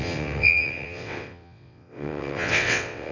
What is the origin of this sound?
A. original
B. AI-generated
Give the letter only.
B